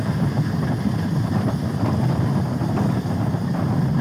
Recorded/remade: remade